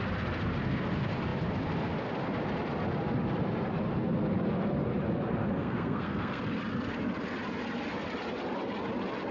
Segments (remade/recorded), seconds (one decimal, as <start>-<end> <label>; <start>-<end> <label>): 0.0-5.6 recorded; 5.6-6.4 remade; 6.4-9.3 recorded